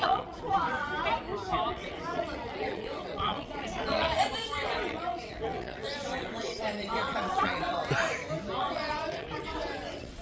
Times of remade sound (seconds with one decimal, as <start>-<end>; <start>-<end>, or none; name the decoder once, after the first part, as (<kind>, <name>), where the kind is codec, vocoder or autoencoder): 0.0-0.9 (vocoder, WaveNeXt); 1.7-7.8; 8.6-10.2